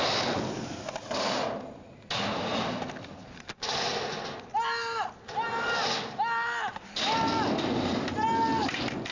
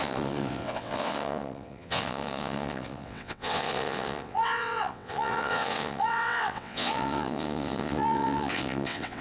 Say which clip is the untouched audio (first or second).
first